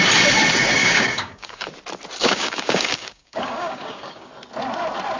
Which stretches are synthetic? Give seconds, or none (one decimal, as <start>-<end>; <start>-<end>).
0.8-1.7; 2.2-4.3